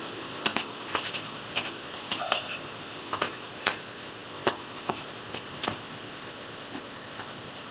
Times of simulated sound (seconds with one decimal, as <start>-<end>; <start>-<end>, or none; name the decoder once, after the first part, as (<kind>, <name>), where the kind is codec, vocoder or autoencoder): 0.0-7.7 (codec, ZipCodec)